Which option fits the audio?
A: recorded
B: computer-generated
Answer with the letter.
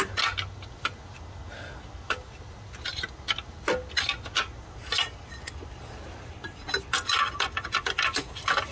A